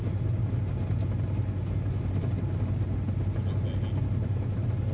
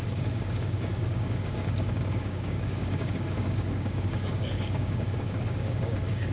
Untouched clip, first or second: first